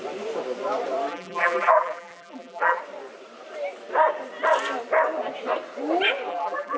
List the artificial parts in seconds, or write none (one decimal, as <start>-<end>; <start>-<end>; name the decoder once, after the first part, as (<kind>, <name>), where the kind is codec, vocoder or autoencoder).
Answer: 1.1-2.8 (vocoder, BigVGAN v2); 6.3-6.8